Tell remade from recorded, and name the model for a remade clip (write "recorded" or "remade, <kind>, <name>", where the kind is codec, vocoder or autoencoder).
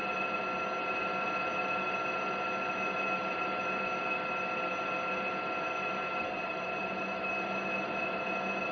recorded